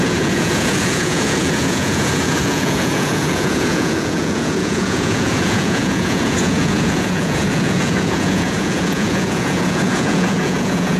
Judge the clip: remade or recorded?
remade